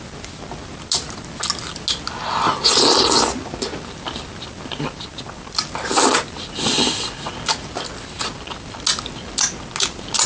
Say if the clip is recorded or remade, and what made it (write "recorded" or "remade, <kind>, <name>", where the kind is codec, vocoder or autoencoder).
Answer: recorded